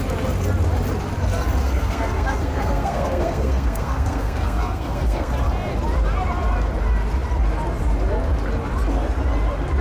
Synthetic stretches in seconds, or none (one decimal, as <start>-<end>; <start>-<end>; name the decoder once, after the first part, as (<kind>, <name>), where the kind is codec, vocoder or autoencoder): 1.6-5.3 (codec, SNAC)